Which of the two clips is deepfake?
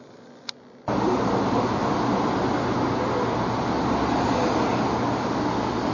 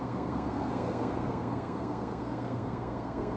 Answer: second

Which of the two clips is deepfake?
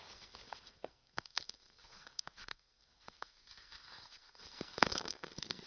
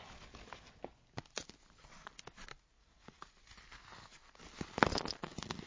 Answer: first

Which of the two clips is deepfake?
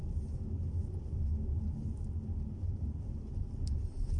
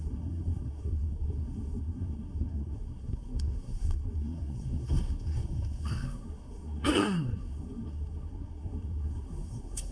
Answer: second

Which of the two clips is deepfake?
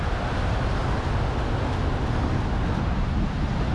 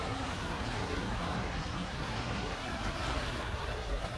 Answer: second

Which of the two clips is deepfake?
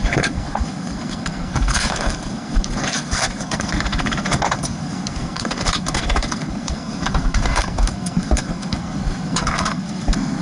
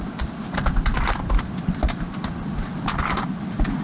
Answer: first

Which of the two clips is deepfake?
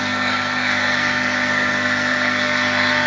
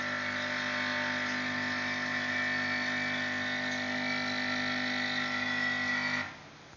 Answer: first